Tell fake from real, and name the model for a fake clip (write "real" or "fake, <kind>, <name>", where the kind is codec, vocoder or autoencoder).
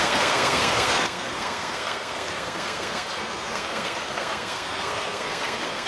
fake, codec, SNAC